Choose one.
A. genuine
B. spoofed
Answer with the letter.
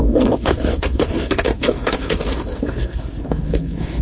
B